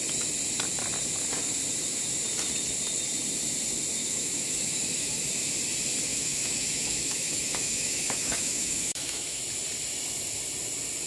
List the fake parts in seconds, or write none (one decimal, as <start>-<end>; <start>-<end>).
4.0-5.2; 6.1-9.4